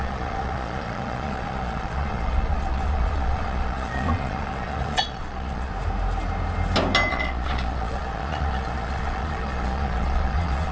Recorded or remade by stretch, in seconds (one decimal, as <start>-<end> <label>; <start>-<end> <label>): 0.0-5.7 remade; 5.7-7.1 recorded; 7.1-10.7 remade

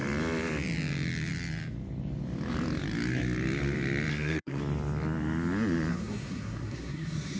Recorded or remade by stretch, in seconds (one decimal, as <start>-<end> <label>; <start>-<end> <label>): 0.0-4.1 recorded; 4.1-4.6 remade; 4.6-5.9 recorded; 5.9-7.4 remade